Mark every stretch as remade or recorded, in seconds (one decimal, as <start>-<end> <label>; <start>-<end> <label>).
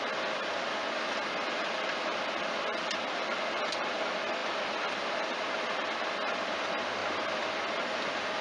0.0-8.4 recorded